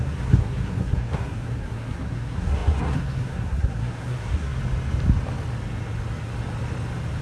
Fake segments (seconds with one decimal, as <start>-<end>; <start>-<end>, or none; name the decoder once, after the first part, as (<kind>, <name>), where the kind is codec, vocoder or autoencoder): 0.0-4.6 (codec, SNAC)